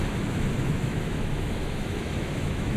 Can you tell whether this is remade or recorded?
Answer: remade